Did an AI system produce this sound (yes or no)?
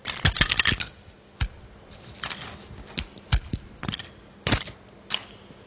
no